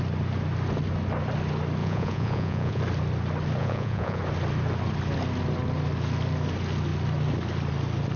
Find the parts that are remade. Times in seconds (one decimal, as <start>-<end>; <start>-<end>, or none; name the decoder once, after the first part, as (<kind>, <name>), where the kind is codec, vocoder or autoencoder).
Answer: 1.8-2.8 (vocoder, Vocos); 3.6-4.2